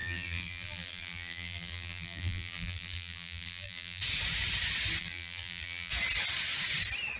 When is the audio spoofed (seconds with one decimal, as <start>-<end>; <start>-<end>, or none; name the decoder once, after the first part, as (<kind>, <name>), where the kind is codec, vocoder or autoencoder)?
0.0-4.0 (vocoder, BigVGAN v2); 5.0-5.9